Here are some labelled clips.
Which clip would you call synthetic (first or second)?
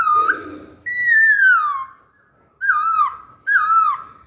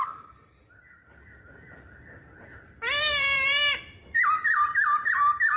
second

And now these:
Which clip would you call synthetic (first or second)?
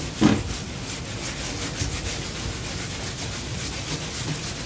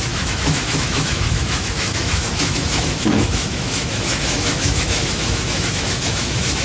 second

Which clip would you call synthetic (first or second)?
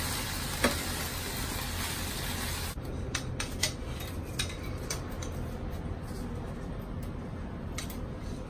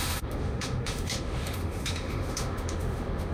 second